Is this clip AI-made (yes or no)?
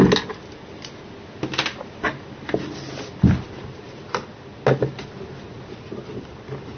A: no